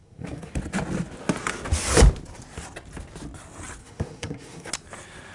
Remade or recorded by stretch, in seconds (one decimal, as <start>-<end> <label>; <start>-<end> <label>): 0.0-0.5 remade; 0.5-3.8 recorded; 3.8-4.7 remade; 4.7-5.3 recorded